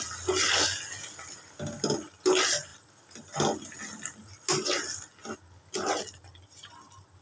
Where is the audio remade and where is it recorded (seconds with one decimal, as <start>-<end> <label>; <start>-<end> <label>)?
0.0-7.2 recorded